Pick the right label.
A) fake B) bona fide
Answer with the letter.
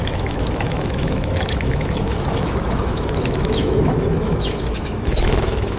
A